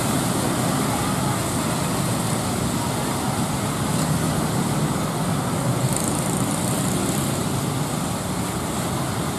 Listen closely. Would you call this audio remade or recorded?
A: recorded